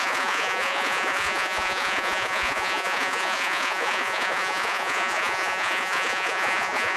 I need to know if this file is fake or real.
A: fake